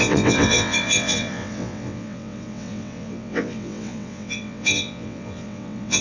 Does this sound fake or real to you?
fake